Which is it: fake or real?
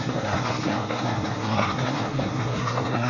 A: fake